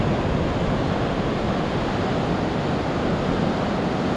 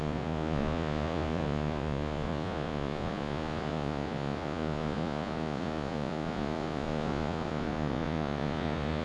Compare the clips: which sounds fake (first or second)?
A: second